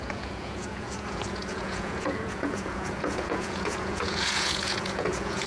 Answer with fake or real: fake